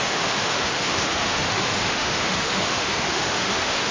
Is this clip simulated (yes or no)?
yes